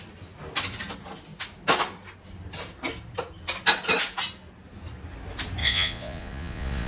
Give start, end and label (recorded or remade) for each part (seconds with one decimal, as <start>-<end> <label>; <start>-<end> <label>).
0.0-5.6 recorded; 5.6-6.9 remade